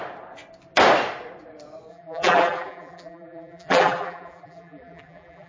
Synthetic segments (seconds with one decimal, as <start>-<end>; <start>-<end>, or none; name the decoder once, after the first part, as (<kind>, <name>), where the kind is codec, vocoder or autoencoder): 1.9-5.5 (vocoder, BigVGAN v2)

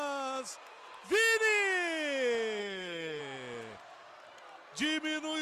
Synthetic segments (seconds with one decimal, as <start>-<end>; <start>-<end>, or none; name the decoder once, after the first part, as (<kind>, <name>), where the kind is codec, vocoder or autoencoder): 2.6-3.2 (codec, SNAC)

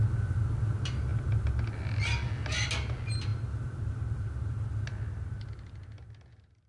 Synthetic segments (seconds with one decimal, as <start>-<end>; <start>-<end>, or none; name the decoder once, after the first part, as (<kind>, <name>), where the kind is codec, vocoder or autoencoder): none